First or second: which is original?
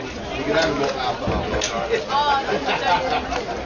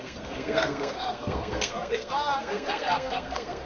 first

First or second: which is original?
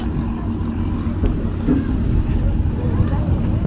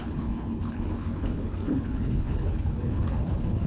first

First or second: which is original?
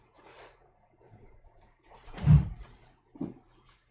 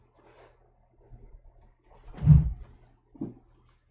second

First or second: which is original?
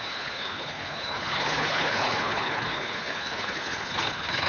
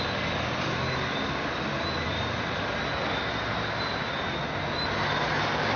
second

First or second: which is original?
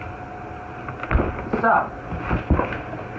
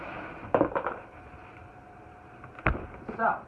first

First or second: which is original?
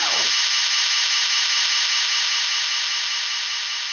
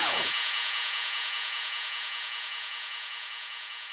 first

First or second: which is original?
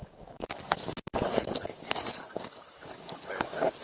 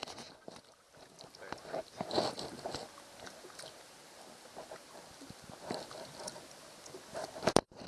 second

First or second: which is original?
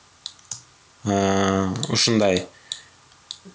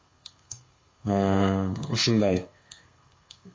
first